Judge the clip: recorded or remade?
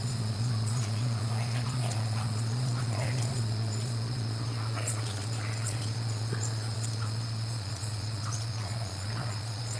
remade